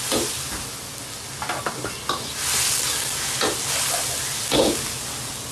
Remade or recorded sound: recorded